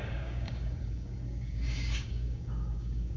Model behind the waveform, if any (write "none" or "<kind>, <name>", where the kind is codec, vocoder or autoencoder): codec, DAC